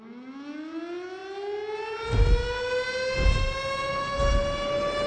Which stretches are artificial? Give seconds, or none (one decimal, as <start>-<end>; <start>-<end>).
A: none